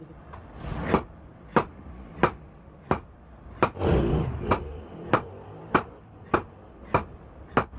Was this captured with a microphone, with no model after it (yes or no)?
yes